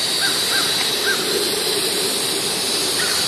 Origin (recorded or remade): remade